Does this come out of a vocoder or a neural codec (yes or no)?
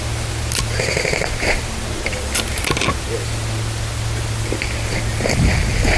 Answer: no